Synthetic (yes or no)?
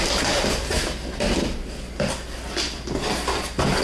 no